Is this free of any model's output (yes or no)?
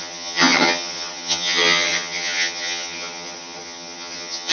no